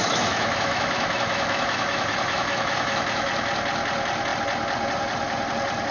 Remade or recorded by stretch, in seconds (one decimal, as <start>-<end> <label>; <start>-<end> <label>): 0.0-3.3 remade; 3.3-5.9 recorded